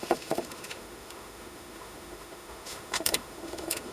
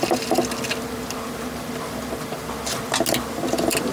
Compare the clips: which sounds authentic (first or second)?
second